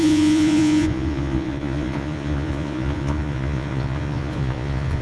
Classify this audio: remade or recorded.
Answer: remade